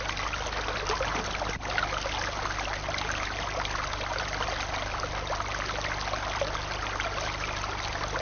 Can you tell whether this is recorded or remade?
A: recorded